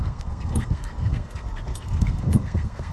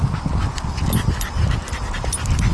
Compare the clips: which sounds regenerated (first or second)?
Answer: first